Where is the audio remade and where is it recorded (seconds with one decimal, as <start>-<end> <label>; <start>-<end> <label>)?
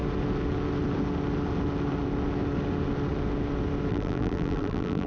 0.0-3.9 recorded; 3.9-5.1 remade